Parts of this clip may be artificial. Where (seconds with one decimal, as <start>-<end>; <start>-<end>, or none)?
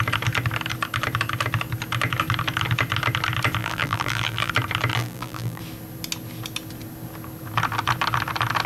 3.6-4.5; 4.9-5.6